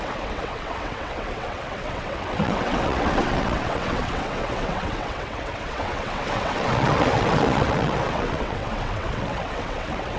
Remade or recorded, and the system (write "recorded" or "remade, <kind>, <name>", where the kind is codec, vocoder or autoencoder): remade, vocoder, WaveNeXt